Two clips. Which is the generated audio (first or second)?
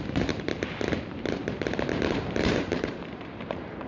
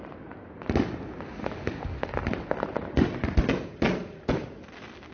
first